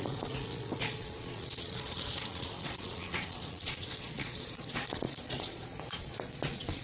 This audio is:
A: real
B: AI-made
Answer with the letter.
B